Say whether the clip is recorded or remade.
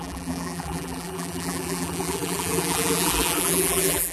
remade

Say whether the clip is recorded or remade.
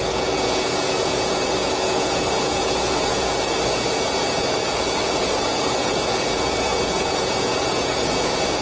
remade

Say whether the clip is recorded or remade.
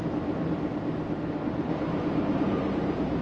recorded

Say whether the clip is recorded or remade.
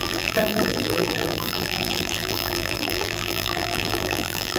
remade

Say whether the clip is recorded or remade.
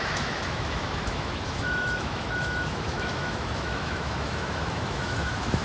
remade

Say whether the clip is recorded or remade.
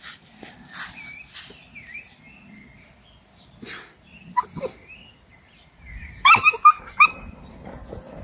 recorded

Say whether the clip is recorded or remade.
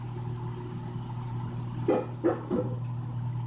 recorded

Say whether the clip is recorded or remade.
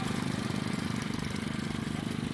recorded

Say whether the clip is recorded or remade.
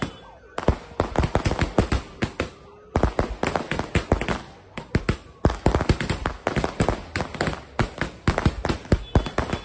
recorded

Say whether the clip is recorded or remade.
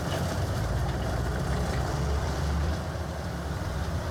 remade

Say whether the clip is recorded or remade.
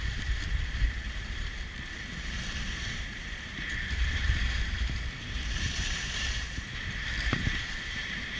remade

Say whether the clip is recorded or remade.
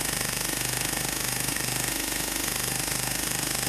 remade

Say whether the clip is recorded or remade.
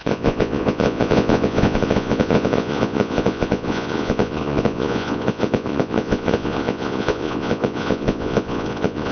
remade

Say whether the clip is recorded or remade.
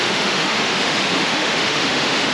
remade